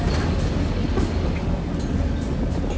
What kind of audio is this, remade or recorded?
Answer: recorded